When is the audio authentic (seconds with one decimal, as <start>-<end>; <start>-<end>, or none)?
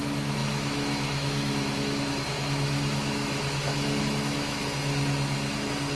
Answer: 4.6-6.0